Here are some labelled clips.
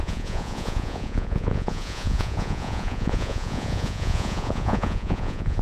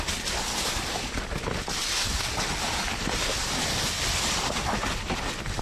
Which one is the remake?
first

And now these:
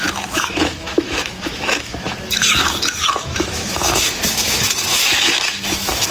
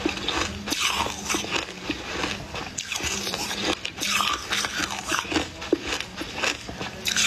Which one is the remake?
first